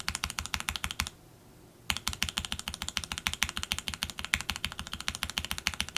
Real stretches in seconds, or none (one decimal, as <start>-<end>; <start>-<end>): 0.0-6.0